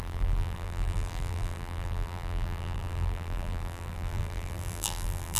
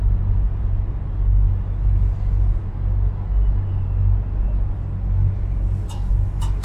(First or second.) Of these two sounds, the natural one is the second